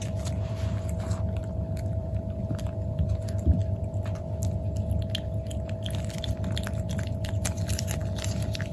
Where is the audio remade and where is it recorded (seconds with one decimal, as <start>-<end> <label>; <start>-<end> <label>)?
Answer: 0.0-3.6 remade; 3.6-6.2 recorded; 6.2-8.7 remade